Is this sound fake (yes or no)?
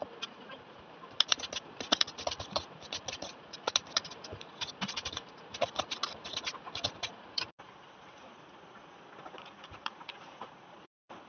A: yes